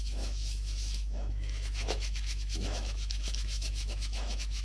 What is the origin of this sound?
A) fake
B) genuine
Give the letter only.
A